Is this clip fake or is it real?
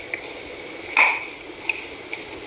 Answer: real